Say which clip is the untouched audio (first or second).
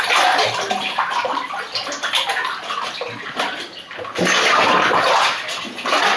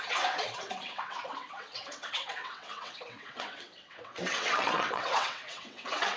first